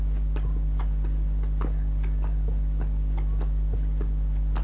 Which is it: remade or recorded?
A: recorded